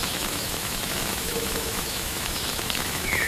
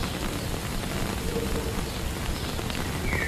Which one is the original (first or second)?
second